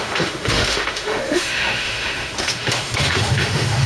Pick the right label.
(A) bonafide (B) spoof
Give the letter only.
B